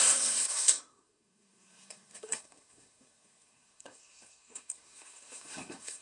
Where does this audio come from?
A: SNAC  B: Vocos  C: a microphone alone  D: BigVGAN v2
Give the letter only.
A